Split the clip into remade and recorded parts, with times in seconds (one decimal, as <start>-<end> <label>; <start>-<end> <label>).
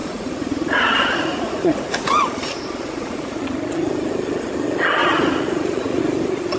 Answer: 0.0-3.4 remade; 3.4-5.0 recorded; 5.0-6.0 remade; 6.0-6.6 recorded